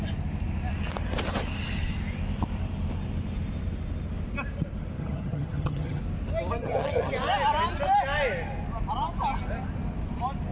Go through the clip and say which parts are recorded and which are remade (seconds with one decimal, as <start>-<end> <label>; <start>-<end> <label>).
0.0-5.0 recorded; 5.0-6.0 remade; 6.0-6.6 recorded; 6.6-7.1 remade; 7.1-10.5 recorded